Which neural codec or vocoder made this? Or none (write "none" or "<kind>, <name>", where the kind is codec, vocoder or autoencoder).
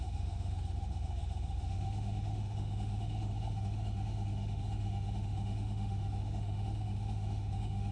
autoencoder, DAC-VAE